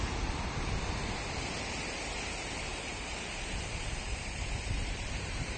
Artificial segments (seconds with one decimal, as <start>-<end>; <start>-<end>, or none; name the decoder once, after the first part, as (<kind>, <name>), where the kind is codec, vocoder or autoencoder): 2.7-5.6 (vocoder, BigVGAN v2)

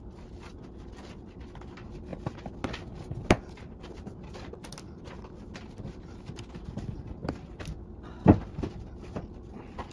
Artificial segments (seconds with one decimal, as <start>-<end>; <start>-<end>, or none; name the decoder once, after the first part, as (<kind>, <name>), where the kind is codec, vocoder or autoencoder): none

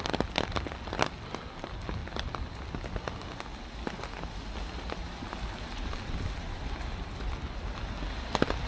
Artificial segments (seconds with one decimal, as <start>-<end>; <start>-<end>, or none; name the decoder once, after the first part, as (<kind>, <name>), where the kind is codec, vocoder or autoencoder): none